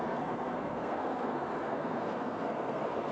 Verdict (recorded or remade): remade